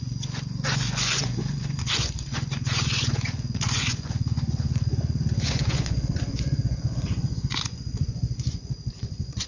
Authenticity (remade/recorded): remade